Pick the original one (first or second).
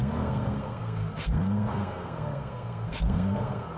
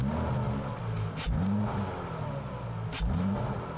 second